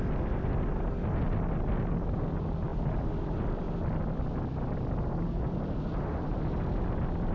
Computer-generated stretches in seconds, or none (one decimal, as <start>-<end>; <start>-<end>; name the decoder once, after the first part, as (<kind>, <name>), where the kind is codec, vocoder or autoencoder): 2.7-3.6 (vocoder, BigVGAN v2)